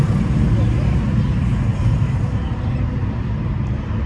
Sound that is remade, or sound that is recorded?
recorded